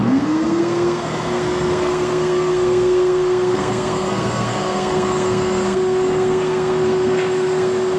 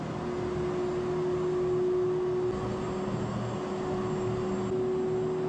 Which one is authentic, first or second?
second